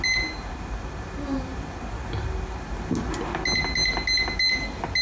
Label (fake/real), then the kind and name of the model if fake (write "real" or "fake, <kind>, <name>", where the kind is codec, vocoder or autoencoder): real